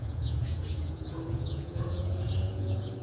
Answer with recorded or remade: remade